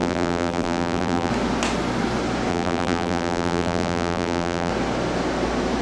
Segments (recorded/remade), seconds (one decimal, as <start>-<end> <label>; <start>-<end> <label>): 0.0-1.3 remade; 1.3-2.5 recorded; 2.5-4.7 remade; 4.7-5.8 recorded